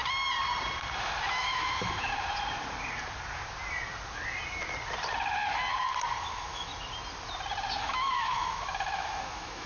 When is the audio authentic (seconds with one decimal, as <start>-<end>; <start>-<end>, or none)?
0.0-1.3; 2.1-6.2; 6.7-7.8

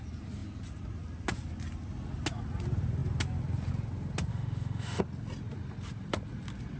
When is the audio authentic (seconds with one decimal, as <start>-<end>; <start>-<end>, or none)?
0.0-4.3; 5.0-6.8

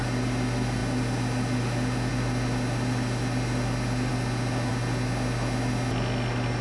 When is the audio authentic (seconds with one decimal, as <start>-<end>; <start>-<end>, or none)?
0.0-6.6